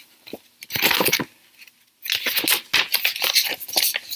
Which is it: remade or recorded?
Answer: recorded